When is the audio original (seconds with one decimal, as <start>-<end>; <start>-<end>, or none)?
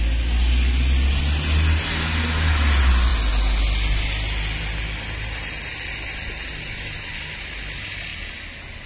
0.0-8.9